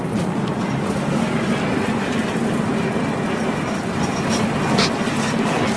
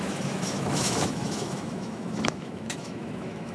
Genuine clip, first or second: first